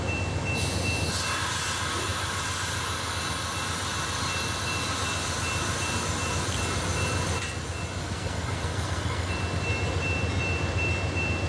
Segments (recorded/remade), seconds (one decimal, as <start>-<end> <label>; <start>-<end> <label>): 0.0-8.0 recorded; 8.0-9.3 remade; 9.3-11.5 recorded